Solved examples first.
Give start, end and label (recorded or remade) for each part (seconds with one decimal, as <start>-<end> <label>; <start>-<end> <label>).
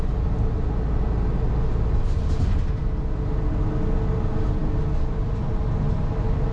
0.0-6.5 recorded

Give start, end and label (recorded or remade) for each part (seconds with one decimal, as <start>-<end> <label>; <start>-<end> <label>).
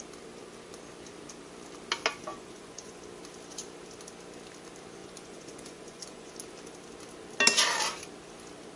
0.0-2.3 recorded; 2.3-3.0 remade; 3.0-5.0 recorded; 5.0-6.3 remade; 6.3-8.8 recorded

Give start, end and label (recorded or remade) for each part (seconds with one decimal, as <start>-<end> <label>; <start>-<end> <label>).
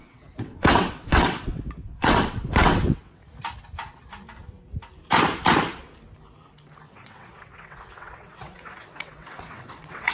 0.0-3.2 remade; 3.2-6.8 recorded; 6.8-10.1 remade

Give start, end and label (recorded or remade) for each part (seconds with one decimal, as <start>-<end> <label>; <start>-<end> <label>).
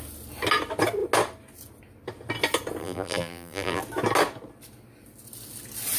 0.0-2.8 recorded; 2.8-3.8 remade; 3.8-6.0 recorded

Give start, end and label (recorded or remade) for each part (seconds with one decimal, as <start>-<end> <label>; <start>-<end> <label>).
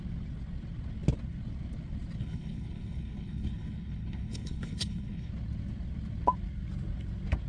0.0-2.2 recorded; 2.2-5.3 remade; 5.3-7.5 recorded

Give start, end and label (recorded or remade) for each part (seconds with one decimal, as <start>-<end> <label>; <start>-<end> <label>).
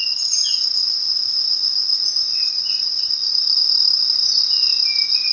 0.0-5.3 recorded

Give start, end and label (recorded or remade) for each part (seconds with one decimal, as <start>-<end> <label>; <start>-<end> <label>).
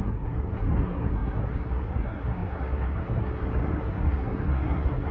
0.0-5.1 remade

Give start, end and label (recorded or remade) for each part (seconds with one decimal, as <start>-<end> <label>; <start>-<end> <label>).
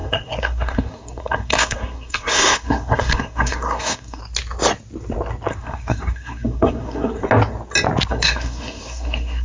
0.0-4.2 remade; 4.2-5.5 recorded; 5.5-7.2 remade; 7.2-8.1 recorded; 8.1-9.4 remade